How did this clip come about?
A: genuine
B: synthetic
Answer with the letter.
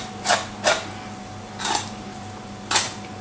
A